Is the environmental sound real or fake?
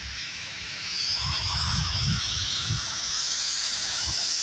fake